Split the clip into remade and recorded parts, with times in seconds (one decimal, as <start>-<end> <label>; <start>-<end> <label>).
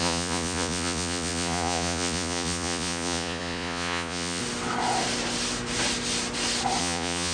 0.0-4.4 remade; 4.4-6.8 recorded; 6.8-7.3 remade